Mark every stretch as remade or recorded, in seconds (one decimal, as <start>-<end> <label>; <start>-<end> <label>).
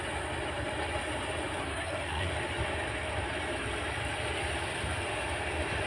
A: 0.0-1.6 recorded; 1.6-2.3 remade; 2.3-5.9 recorded